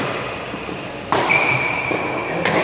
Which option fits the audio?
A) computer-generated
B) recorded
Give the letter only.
B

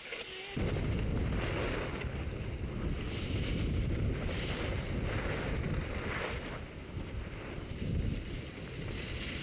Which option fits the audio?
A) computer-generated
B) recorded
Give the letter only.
B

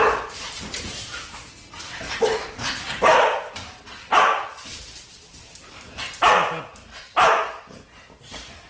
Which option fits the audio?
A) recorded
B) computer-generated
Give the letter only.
B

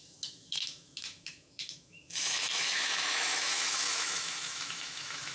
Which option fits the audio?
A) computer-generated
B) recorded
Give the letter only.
A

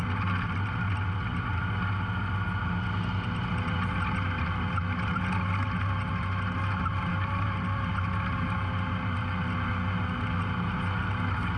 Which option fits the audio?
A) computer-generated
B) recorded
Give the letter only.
B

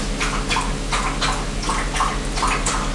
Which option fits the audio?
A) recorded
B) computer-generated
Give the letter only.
A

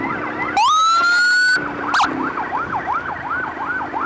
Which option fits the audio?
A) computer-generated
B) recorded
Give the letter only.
B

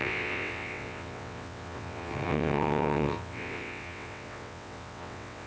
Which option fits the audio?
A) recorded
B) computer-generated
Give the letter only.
B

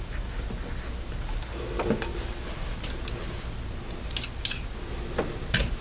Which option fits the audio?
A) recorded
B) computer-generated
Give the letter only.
A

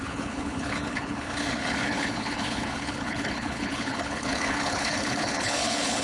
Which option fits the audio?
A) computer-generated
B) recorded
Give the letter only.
A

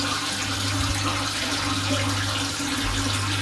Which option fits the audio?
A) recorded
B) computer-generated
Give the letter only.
A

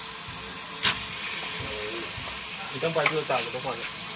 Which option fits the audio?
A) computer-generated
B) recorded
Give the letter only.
B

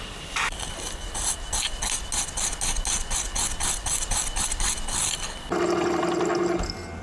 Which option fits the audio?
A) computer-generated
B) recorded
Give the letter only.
B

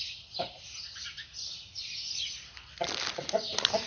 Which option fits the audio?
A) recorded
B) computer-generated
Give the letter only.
A